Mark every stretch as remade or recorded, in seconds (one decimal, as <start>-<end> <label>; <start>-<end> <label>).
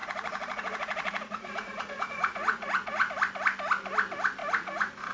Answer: 0.0-3.1 remade; 3.1-4.4 recorded; 4.4-5.1 remade